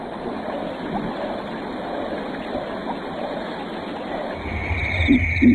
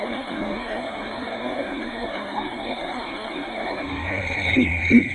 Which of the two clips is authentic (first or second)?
first